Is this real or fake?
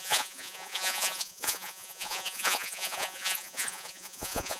fake